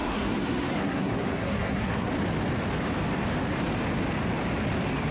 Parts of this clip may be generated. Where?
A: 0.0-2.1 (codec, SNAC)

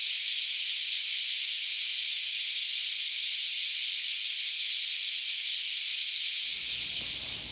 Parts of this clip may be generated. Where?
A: none

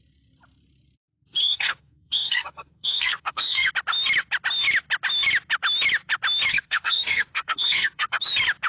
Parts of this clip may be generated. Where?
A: 1.4-3.7 (codec, SNAC); 6.5-8.2

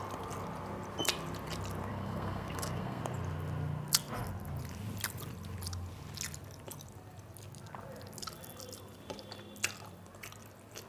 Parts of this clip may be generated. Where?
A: 1.9-3.0 (codec, SNAC)

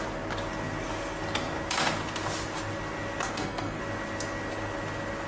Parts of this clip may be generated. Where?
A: 3.3-3.8 (codec, SNAC)

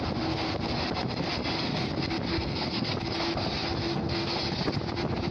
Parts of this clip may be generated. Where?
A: 2.3-2.9 (codec, SNAC); 3.8-4.4

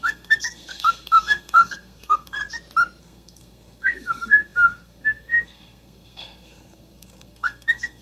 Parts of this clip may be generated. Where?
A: 0.0-2.4 (codec, SNAC); 3.0-8.0